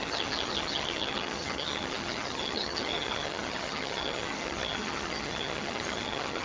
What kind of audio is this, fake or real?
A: fake